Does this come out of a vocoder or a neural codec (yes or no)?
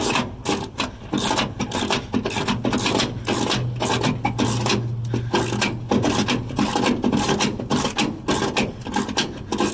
no